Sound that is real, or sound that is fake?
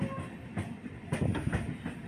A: real